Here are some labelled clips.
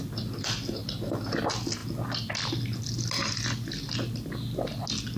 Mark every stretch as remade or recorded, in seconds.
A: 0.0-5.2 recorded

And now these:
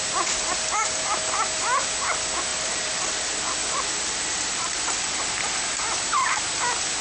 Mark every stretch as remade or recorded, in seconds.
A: 0.0-2.5 recorded; 2.5-5.6 remade; 5.6-7.0 recorded

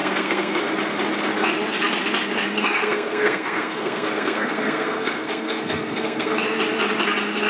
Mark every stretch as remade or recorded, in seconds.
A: 0.0-0.6 remade; 0.6-2.8 recorded; 2.8-6.3 remade; 6.3-7.5 recorded